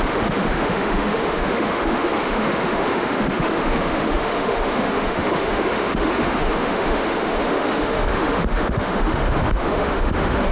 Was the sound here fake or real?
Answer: fake